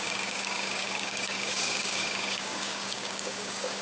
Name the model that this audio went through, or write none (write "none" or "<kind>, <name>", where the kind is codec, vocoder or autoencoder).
codec, DAC